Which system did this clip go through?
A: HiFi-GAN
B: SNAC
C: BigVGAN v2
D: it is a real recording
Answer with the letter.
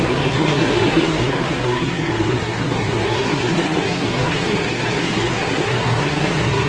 B